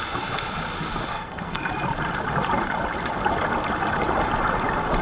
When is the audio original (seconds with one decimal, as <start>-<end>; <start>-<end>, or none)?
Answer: 0.0-1.1; 1.7-5.0